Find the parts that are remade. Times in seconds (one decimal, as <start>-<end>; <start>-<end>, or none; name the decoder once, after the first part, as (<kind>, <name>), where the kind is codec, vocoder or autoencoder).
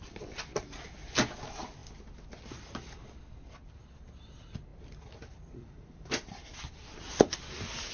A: 1.8-2.3 (vocoder, BigVGAN v2); 4.7-7.4